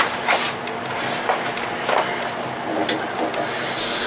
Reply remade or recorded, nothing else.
recorded